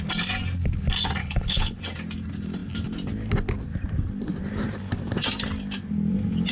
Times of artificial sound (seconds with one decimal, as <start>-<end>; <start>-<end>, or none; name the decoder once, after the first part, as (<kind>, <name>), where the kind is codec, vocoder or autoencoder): 1.2-1.8 (codec, HILCodec)